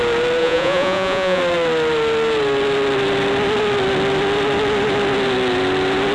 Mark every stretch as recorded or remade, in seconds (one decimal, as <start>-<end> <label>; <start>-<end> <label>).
0.0-0.4 recorded; 0.4-1.4 remade; 1.4-6.1 recorded

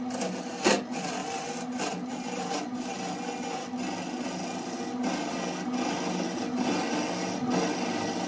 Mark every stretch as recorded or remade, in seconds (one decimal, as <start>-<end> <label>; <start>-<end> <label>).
0.0-8.3 recorded

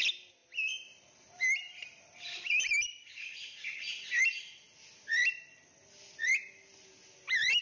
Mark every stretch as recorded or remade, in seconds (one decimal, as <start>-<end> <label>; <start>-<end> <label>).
0.0-7.6 recorded

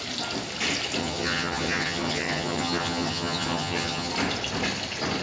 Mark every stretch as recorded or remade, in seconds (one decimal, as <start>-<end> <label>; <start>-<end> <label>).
0.0-1.0 recorded; 1.0-4.1 remade; 4.1-5.2 recorded

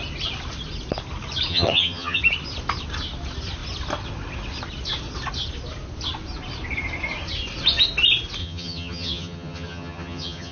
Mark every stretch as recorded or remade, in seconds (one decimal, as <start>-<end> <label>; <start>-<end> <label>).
0.0-1.5 recorded; 1.5-2.2 remade; 2.2-8.4 recorded; 8.4-10.5 remade

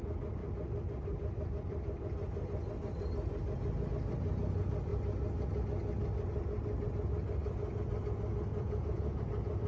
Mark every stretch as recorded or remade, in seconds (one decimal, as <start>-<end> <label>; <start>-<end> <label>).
0.0-8.5 recorded; 8.5-9.2 remade; 9.2-9.7 recorded

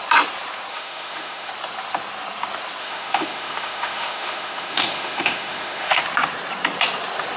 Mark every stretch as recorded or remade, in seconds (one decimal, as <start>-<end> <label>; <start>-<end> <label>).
0.0-0.7 recorded; 0.7-1.5 remade; 1.5-2.8 recorded; 2.8-6.0 remade; 6.0-7.4 recorded

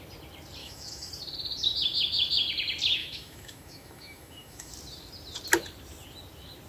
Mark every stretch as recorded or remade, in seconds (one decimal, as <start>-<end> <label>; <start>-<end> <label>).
0.0-0.6 recorded; 0.6-1.1 remade; 1.1-3.0 recorded; 3.0-4.7 remade; 4.7-6.7 recorded